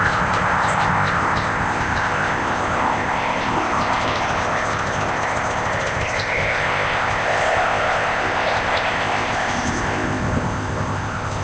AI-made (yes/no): yes